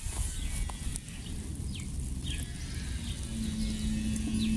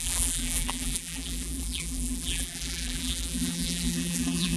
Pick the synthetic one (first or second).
second